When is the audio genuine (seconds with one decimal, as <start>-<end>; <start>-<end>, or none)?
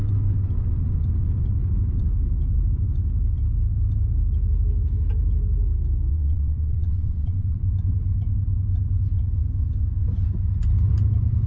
0.0-6.1; 7.6-11.5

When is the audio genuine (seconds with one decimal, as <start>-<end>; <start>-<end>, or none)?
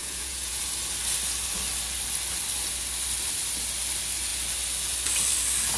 0.6-5.8